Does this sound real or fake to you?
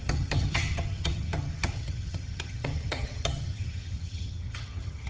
fake